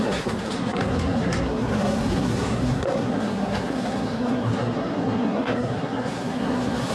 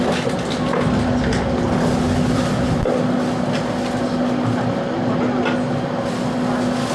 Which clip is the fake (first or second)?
first